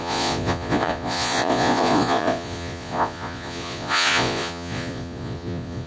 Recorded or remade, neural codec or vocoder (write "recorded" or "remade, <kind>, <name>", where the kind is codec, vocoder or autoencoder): remade, vocoder, Vocos